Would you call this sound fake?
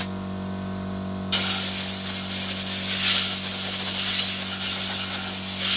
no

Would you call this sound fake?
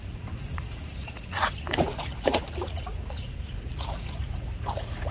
yes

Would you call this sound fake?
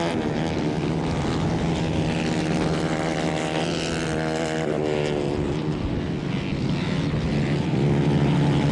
no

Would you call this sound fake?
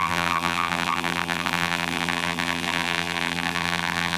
yes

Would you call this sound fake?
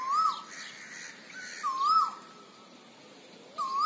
no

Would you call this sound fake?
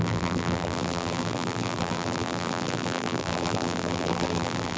yes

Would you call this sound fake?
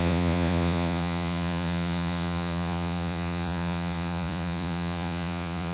yes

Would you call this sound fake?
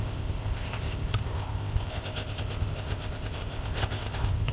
yes